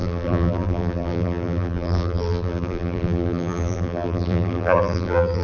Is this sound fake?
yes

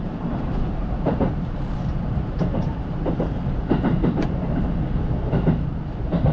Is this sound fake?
yes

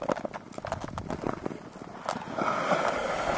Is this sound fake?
no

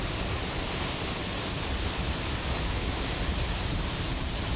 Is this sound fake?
yes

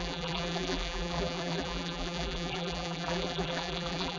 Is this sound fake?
yes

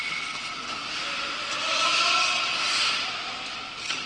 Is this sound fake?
no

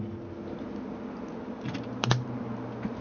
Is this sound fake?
no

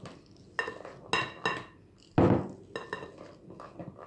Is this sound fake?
no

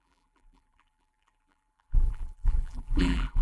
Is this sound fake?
yes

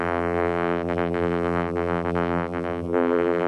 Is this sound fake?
yes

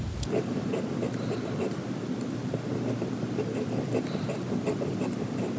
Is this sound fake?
no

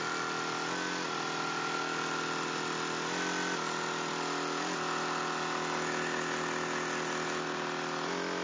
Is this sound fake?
no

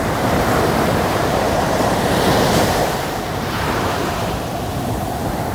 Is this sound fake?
yes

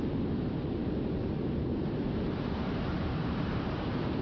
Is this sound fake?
yes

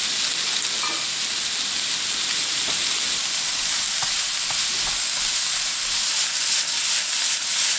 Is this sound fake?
no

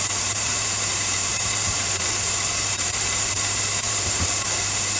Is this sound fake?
yes